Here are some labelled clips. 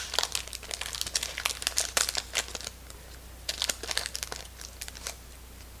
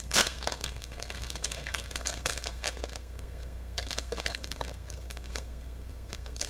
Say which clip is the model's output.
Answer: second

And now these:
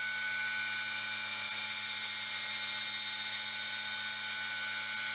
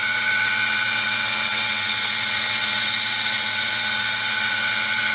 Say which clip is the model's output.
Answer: second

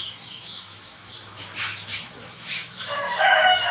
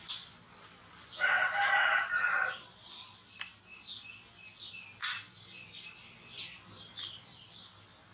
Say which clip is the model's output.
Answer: first